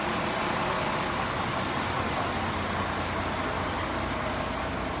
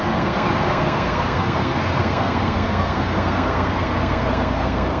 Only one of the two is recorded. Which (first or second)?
first